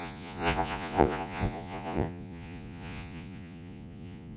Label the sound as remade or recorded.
remade